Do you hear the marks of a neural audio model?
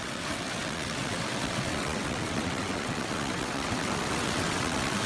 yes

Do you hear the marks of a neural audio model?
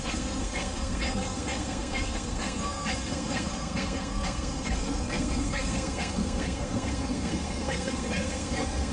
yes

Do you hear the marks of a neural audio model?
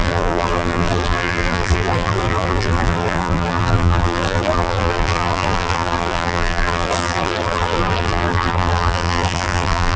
yes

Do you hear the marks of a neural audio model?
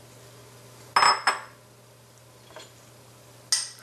no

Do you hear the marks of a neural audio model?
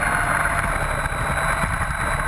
no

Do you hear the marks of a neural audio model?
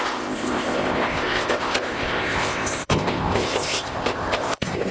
yes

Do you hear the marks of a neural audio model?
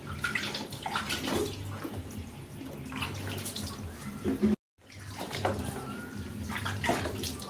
no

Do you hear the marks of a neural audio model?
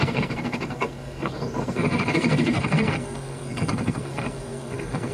yes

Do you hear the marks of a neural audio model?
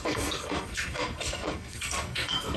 yes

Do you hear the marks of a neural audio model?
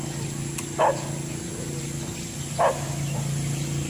no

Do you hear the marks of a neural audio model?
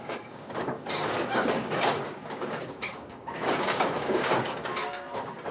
yes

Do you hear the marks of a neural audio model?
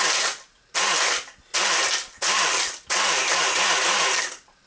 no